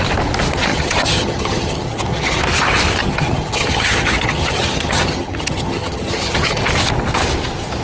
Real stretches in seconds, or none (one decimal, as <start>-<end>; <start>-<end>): 0.0-0.7; 2.4-3.0; 6.6-7.8